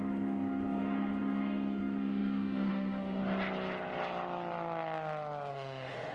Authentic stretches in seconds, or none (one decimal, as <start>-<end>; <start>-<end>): 3.2-5.5